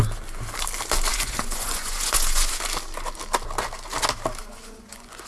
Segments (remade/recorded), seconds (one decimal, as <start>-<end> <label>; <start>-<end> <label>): 0.0-1.1 recorded; 1.1-2.6 remade; 2.6-4.4 recorded; 4.4-5.3 remade